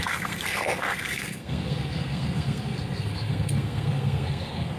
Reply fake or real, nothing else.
fake